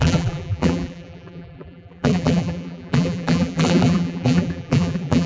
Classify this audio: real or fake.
fake